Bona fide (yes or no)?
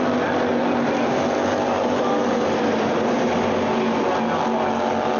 yes